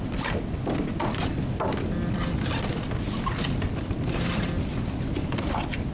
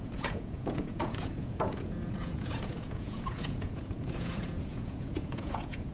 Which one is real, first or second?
first